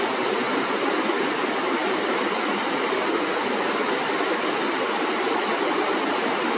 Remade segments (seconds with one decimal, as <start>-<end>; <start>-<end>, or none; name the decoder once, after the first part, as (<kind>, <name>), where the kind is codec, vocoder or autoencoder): none